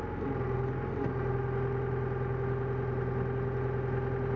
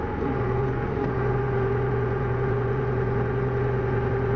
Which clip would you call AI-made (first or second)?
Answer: second